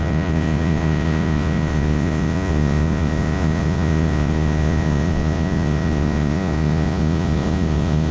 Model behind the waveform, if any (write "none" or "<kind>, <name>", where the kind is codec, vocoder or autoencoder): vocoder, Vocos